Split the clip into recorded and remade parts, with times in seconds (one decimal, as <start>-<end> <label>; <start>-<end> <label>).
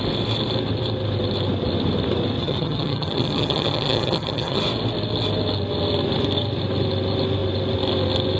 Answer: 0.0-2.4 recorded; 2.4-4.6 remade; 4.6-8.4 recorded